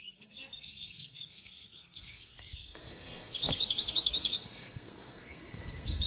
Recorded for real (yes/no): no